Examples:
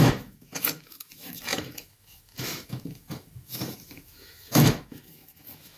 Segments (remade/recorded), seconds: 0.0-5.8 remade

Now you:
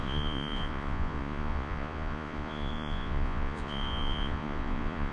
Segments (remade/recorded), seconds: 0.0-5.1 remade

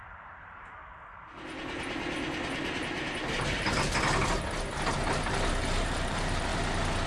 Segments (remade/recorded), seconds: 0.0-0.8 remade; 0.8-5.1 recorded; 5.1-7.1 remade

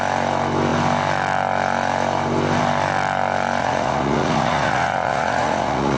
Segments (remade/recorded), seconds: 0.0-3.6 recorded; 3.6-6.0 remade

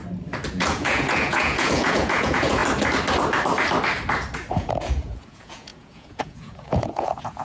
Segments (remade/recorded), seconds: 0.0-0.5 recorded; 0.5-2.6 remade; 2.6-4.5 recorded; 4.5-7.4 remade

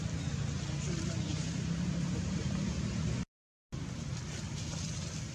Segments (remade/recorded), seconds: 0.0-1.3 recorded; 1.3-3.6 remade; 3.6-5.3 recorded

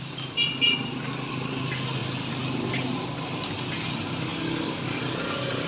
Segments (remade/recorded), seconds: 0.0-4.3 recorded; 4.3-5.0 remade; 5.0-5.7 recorded